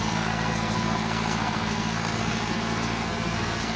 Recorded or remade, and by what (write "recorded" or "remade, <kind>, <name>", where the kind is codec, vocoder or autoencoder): remade, codec, SNAC